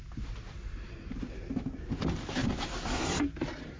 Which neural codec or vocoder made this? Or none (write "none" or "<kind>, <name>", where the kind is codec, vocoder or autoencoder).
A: none